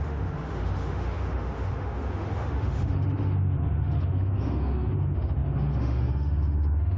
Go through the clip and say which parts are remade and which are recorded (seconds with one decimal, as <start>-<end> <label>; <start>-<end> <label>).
0.0-7.0 remade